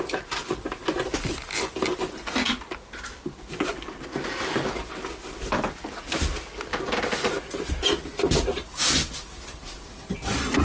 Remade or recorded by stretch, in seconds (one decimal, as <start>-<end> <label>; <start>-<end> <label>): 0.0-10.6 recorded